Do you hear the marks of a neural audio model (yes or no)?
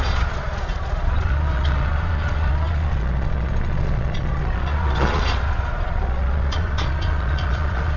yes